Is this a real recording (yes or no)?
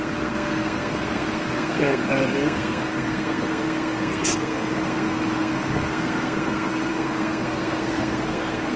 no